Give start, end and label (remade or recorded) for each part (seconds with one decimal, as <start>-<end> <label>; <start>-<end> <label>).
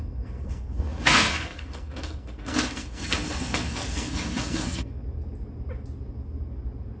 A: 0.0-5.0 remade; 5.0-7.0 recorded